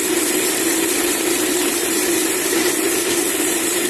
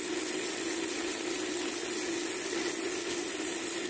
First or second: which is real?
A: second